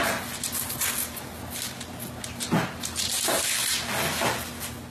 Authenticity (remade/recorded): recorded